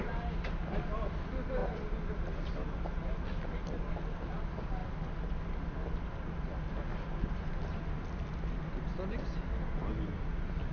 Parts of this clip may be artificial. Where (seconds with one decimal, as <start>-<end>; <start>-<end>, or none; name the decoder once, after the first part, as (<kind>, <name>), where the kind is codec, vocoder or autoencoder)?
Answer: none